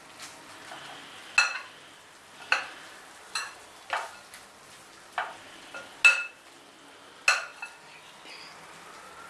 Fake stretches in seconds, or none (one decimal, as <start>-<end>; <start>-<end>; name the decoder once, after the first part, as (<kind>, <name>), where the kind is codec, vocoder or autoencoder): none